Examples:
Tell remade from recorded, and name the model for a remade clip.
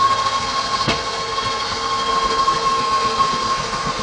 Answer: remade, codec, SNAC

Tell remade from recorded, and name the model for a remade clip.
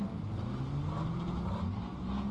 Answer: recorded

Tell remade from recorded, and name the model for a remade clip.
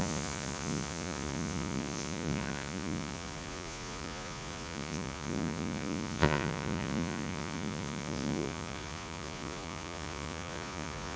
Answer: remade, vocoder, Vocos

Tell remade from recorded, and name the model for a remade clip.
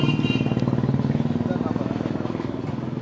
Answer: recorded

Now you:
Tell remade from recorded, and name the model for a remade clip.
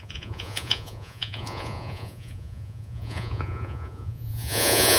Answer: remade, vocoder, Vocos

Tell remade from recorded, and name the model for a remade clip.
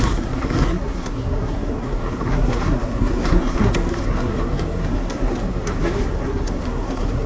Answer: remade, codec, SNAC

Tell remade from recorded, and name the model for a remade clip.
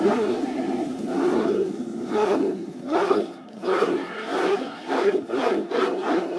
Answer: remade, codec, SNAC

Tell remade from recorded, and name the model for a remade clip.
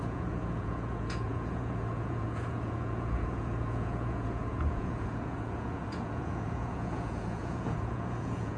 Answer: remade, vocoder, Vocos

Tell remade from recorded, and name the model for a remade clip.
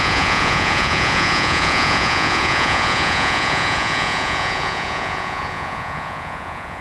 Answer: remade, vocoder, Vocos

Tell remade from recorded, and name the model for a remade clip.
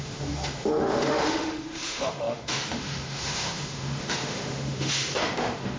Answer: remade, autoencoder, DAC-VAE